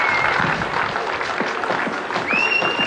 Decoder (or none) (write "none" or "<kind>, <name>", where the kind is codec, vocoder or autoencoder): none